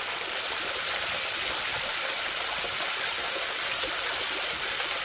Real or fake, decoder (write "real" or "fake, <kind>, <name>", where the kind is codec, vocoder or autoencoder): real